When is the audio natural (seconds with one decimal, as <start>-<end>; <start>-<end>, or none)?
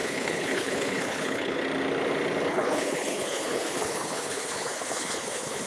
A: 1.6-2.5